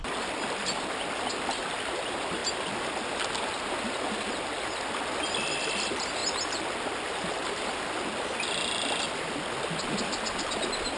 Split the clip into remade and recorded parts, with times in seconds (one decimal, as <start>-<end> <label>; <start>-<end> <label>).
0.0-11.0 recorded

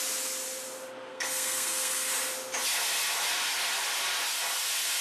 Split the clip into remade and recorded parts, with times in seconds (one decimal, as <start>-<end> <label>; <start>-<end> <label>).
0.0-1.1 recorded; 1.1-2.1 remade; 2.1-5.0 recorded

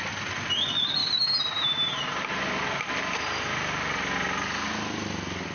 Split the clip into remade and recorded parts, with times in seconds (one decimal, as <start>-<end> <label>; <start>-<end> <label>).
0.0-5.5 recorded